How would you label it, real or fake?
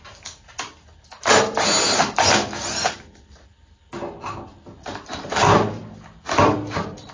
real